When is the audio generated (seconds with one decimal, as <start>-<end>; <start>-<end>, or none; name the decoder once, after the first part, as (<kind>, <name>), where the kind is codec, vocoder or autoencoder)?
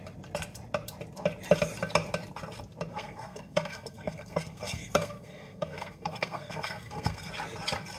2.9-7.3 (codec, SNAC)